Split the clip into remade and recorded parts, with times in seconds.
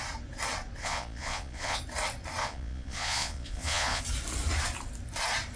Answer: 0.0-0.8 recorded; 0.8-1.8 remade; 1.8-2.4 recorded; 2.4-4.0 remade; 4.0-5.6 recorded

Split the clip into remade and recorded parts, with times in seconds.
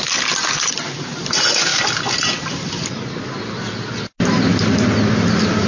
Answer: 0.0-5.7 recorded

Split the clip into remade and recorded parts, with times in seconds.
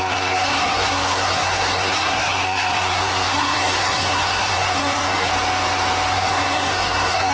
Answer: 0.0-5.3 remade; 5.3-6.1 recorded; 6.1-7.3 remade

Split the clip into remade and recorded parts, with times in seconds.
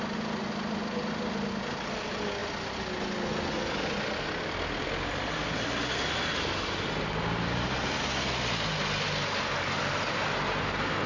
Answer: 0.0-11.1 recorded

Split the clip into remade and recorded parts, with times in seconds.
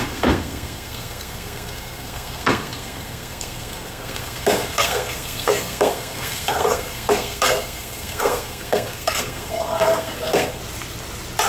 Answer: 0.0-10.6 remade; 10.6-11.5 recorded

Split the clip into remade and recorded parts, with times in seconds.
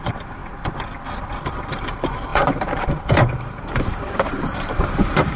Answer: 0.0-0.4 remade; 0.4-1.5 recorded; 1.5-5.4 remade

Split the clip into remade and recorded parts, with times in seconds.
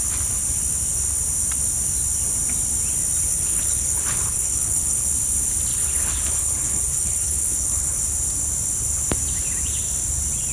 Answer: 0.0-3.3 recorded; 3.3-5.0 remade; 5.0-5.7 recorded; 5.7-8.0 remade; 8.0-10.5 recorded